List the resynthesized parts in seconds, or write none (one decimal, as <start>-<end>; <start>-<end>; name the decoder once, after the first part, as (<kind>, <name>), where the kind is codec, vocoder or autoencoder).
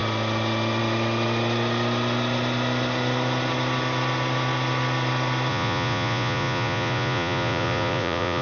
5.5-8.4 (vocoder, Vocos)